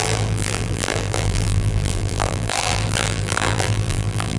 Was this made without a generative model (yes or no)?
no